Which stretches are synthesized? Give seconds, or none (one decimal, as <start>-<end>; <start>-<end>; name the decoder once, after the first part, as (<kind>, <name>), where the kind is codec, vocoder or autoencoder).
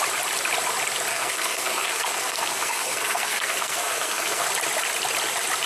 1.1-4.5 (codec, SNAC)